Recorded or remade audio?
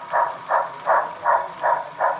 recorded